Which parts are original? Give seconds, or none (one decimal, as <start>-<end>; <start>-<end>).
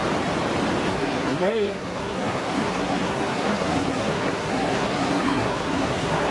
0.0-0.9